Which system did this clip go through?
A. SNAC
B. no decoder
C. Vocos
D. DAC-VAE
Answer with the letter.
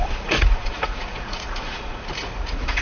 C